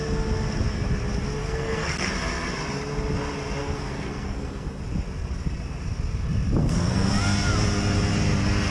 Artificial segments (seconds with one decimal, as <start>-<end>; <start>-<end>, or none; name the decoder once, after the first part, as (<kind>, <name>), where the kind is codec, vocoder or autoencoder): 1.4-2.1 (codec, SNAC); 3.6-4.8; 6.6-7.1